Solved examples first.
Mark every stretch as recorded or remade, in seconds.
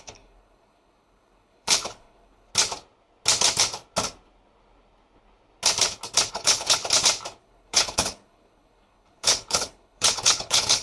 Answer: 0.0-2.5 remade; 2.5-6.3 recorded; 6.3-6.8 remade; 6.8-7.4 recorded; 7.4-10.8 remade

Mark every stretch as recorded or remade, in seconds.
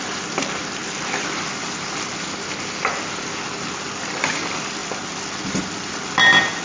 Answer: 0.0-6.6 recorded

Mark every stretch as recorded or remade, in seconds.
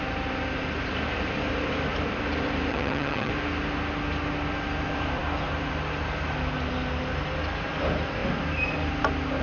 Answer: 0.0-2.7 recorded; 2.7-3.3 remade; 3.3-9.4 recorded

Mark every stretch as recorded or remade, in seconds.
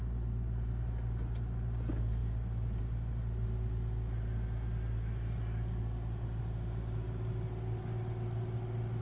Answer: 0.0-9.0 recorded